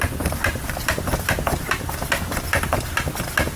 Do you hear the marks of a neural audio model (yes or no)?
no